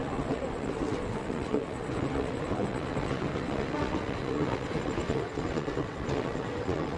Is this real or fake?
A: fake